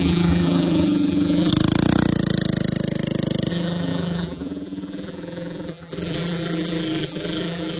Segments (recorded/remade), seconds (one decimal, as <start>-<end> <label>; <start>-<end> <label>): 0.0-1.5 remade; 1.5-3.5 recorded; 3.5-7.8 remade